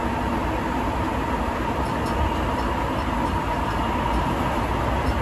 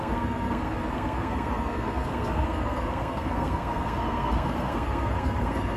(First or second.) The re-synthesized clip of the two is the second